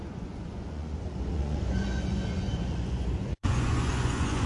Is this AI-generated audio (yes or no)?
yes